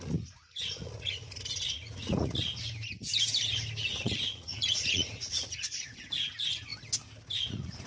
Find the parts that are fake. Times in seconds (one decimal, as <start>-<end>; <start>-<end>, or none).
0.0-2.5; 3.9-6.7; 7.3-7.9